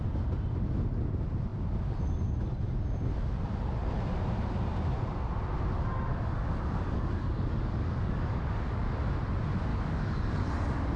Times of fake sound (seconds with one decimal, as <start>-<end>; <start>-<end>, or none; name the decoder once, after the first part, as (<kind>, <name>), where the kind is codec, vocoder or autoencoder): 6.1-8.9 (codec, DAC); 9.7-10.4